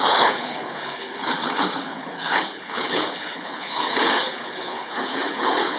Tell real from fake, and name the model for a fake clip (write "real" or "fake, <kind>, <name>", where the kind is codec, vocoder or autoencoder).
fake, codec, HILCodec